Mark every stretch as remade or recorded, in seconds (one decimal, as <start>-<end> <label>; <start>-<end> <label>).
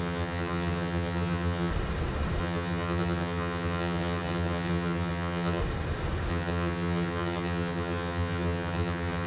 0.0-1.7 remade; 1.7-2.4 recorded; 2.4-5.6 remade; 5.6-6.3 recorded; 6.3-9.3 remade